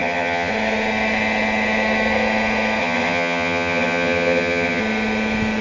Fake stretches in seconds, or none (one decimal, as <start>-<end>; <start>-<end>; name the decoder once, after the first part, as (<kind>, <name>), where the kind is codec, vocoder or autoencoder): 0.0-0.5 (vocoder, HiFi-GAN); 2.8-4.8